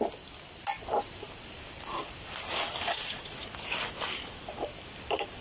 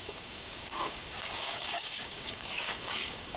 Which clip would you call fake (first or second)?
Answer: second